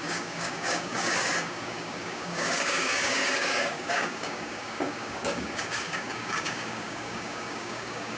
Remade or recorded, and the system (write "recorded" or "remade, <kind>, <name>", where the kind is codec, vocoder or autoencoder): remade, codec, DAC